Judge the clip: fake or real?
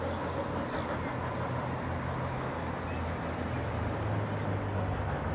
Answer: real